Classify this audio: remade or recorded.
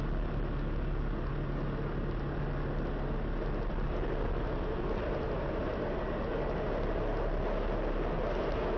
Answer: recorded